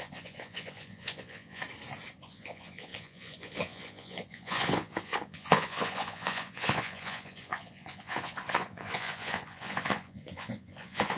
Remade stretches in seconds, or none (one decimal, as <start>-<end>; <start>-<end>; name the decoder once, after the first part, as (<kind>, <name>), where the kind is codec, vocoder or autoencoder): 0.0-1.6 (vocoder, Vocos); 2.2-11.2